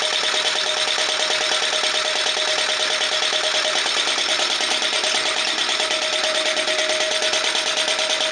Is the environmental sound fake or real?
real